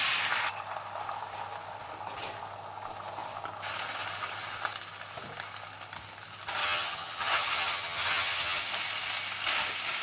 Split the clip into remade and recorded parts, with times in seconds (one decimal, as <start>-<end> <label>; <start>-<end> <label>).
0.0-6.6 recorded; 6.6-8.7 remade; 8.7-10.0 recorded